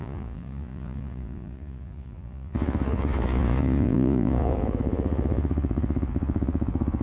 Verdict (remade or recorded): remade